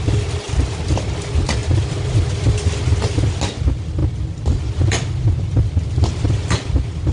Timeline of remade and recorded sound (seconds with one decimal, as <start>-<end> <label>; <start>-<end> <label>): 0.0-7.1 recorded